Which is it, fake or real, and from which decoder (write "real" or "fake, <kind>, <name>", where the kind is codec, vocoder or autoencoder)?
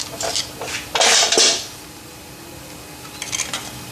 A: real